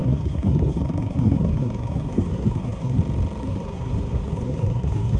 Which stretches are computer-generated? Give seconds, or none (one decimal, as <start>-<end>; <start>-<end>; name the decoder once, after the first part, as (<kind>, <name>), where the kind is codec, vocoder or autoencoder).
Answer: 0.0-3.0 (codec, SNAC); 3.4-5.2